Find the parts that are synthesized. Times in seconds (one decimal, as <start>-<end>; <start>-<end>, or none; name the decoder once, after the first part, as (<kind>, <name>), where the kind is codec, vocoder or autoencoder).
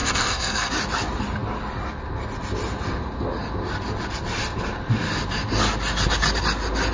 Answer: 0.0-0.7 (codec, SNAC)